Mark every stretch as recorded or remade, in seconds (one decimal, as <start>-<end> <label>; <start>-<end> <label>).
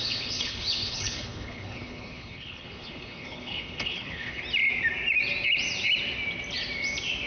0.0-4.4 remade; 4.4-7.3 recorded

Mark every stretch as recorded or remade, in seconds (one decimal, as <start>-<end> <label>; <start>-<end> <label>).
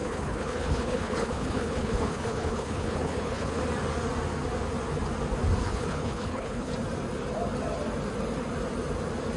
0.0-3.6 remade; 3.6-5.6 recorded; 5.6-6.7 remade; 6.7-9.4 recorded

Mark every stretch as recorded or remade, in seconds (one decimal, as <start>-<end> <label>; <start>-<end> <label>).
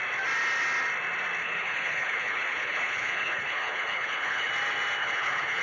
0.0-1.4 recorded; 1.4-4.5 remade; 4.5-5.0 recorded; 5.0-5.6 remade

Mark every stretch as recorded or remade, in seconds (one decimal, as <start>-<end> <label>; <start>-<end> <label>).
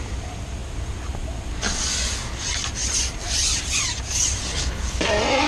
0.0-4.5 recorded; 4.5-5.0 remade; 5.0-5.5 recorded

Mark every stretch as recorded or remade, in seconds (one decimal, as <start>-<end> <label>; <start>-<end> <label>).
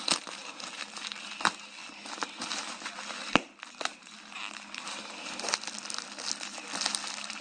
0.0-7.4 recorded